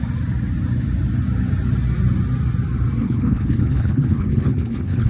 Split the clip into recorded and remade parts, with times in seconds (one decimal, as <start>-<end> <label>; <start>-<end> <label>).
0.0-3.0 recorded; 3.0-5.1 remade